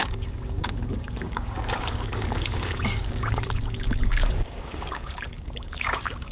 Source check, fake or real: fake